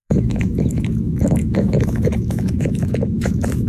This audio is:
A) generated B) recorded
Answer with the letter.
A